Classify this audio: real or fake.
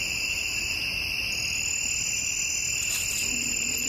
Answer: real